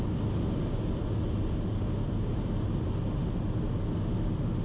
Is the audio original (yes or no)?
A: yes